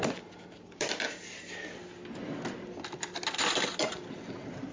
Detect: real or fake real